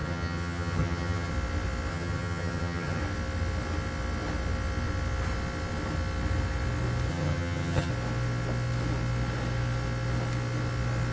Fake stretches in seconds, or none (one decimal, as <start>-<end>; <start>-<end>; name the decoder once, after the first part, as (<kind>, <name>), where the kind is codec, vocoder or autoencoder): 0.0-1.3 (vocoder, HiFi-GAN); 1.9-3.0; 7.1-7.9